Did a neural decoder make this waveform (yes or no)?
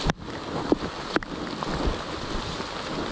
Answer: no